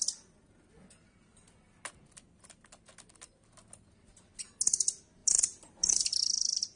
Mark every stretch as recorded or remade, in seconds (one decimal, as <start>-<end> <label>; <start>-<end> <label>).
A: 0.0-5.2 recorded; 5.2-6.8 remade